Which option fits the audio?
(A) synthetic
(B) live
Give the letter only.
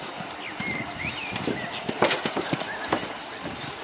A